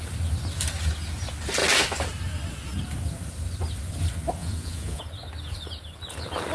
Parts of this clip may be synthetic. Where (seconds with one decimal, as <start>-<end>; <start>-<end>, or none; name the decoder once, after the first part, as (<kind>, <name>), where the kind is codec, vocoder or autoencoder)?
4.4-5.0 (vocoder, Vocos)